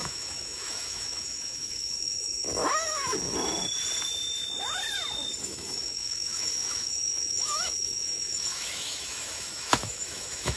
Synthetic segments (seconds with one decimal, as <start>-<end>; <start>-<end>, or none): 0.0-3.1; 5.4-10.6